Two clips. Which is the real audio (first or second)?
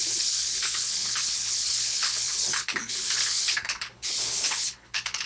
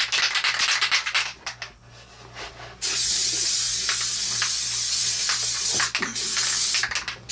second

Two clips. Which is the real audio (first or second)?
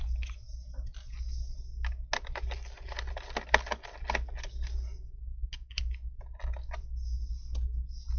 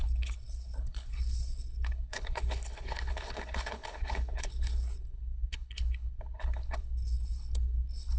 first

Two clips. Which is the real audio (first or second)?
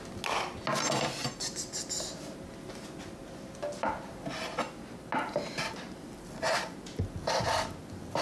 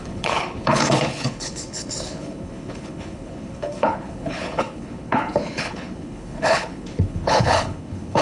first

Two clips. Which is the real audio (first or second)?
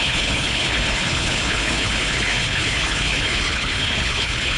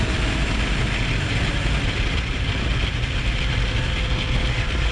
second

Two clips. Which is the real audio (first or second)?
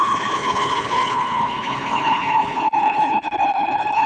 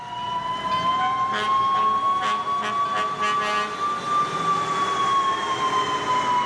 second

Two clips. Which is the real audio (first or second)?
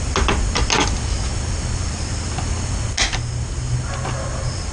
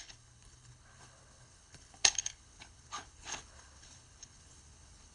first